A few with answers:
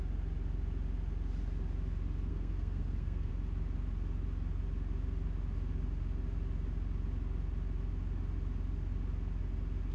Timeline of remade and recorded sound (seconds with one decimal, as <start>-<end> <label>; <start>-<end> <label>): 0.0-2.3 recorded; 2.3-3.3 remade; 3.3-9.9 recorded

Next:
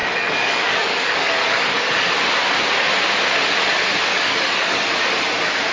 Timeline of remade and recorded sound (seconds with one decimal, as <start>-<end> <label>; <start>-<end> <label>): 0.0-2.1 remade; 2.1-4.1 recorded; 4.1-4.8 remade; 4.8-5.7 recorded

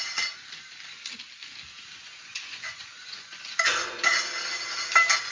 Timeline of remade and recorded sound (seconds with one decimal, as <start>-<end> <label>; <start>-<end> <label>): 0.0-2.0 recorded; 2.0-4.1 remade; 4.1-5.3 recorded

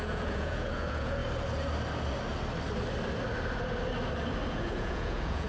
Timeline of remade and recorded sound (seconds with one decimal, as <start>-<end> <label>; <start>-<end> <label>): 0.0-1.2 remade; 1.2-4.5 recorded; 4.5-5.5 remade

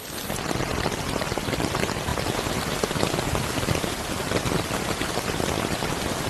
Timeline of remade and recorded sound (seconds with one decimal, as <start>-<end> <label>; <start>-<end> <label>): 0.0-0.7 recorded; 0.7-1.7 remade; 1.7-2.1 recorded; 2.1-5.4 remade; 5.4-6.3 recorded

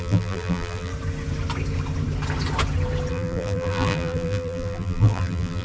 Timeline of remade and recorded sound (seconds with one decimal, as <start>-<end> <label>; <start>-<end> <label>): 0.0-0.9 remade; 0.9-3.1 recorded; 3.1-5.6 remade

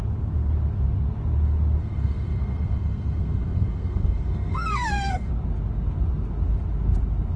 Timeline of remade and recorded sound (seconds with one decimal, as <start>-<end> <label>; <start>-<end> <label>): 0.0-1.8 recorded; 1.8-5.3 remade; 5.3-7.4 recorded